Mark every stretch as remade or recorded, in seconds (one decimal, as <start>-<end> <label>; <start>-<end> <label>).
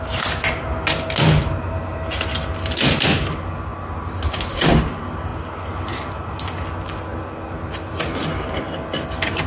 0.0-9.5 recorded